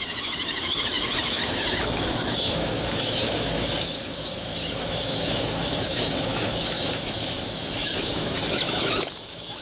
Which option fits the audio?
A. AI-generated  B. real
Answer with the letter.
A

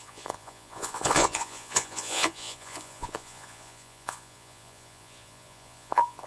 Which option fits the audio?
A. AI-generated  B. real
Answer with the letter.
A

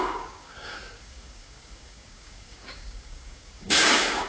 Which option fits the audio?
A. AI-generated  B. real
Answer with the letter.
A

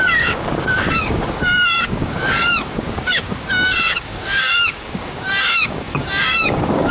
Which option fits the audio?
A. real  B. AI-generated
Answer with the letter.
B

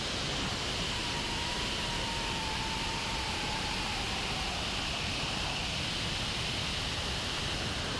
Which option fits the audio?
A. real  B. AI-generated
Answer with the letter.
A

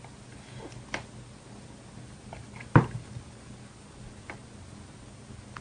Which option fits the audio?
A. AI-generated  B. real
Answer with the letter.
B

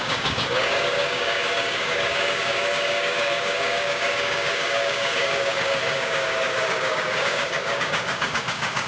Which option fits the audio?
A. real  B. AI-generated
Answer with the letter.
B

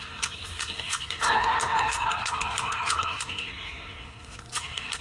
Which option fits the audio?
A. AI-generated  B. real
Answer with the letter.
A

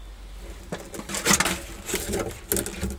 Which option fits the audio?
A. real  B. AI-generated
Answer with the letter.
A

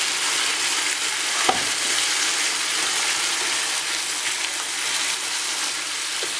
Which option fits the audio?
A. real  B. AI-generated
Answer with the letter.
A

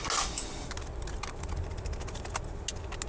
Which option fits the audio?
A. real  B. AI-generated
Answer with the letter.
A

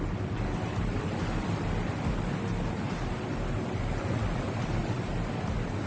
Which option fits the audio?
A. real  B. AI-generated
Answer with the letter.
A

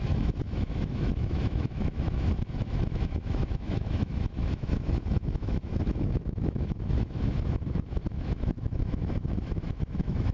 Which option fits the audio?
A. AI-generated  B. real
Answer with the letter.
A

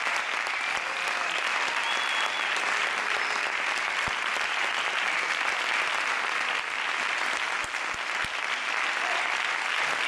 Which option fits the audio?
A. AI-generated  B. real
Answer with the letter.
B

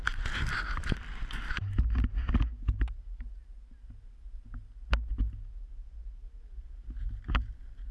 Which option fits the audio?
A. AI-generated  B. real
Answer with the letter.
B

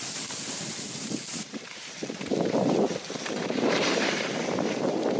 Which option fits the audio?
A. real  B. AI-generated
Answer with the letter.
A